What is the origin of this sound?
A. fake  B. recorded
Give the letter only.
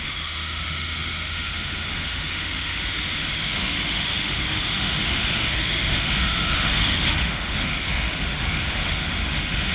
A